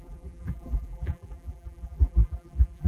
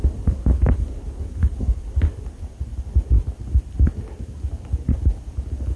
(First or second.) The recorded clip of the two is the second